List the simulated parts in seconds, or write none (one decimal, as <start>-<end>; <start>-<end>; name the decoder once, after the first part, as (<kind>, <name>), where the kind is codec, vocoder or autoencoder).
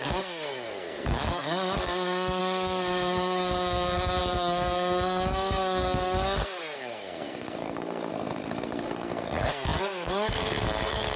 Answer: 0.0-11.2 (codec, SNAC)